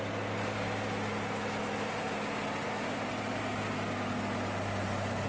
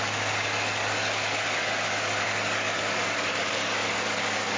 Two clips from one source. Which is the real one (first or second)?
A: first